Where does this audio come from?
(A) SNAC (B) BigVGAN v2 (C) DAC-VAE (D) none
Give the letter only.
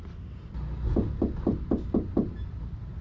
D